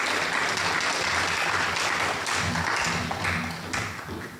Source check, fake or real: real